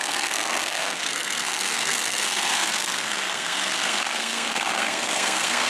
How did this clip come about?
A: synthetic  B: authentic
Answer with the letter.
A